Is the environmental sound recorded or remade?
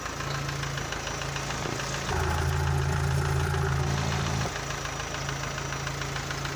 recorded